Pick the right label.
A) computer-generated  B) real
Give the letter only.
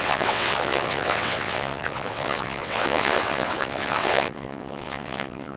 A